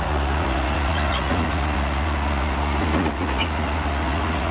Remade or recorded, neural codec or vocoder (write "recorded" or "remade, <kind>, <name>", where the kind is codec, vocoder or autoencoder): remade, vocoder, Vocos